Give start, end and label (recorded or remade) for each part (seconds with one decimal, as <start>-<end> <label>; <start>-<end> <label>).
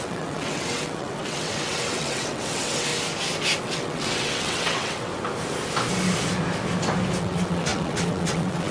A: 0.0-2.9 remade; 2.9-3.6 recorded; 3.6-5.1 remade; 5.1-7.2 recorded; 7.2-8.7 remade